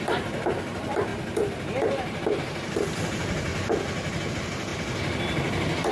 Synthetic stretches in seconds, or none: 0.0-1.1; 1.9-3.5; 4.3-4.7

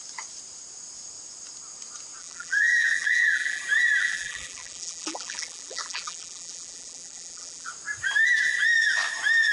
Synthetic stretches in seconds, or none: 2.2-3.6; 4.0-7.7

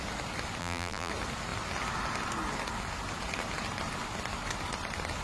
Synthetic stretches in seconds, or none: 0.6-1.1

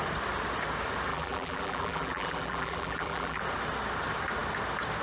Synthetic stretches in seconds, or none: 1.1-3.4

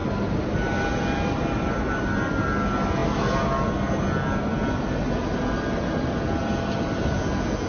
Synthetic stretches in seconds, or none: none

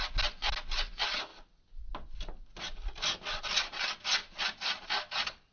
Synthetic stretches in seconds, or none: none

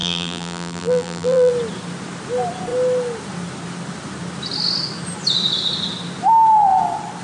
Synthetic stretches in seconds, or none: 0.0-1.5